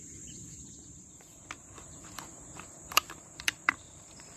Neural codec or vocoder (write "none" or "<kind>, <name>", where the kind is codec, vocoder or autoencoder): vocoder, BigVGAN v2